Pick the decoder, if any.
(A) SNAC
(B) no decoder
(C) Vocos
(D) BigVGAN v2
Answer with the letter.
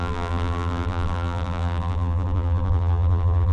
D